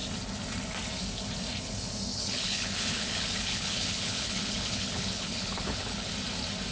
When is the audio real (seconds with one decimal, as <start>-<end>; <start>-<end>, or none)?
0.0-2.1; 6.1-6.7